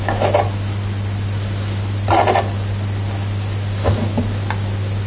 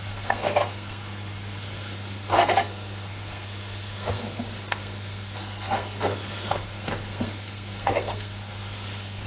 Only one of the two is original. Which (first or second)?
first